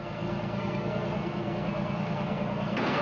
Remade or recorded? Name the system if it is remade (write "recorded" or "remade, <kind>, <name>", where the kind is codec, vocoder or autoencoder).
remade, codec, SNAC